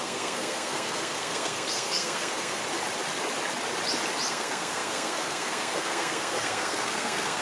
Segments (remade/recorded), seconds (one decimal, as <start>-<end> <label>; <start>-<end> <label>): 0.0-2.6 remade; 2.6-4.3 recorded; 4.3-7.4 remade